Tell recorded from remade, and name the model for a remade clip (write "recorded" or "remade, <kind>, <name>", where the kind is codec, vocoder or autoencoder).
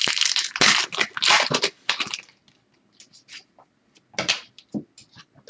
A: recorded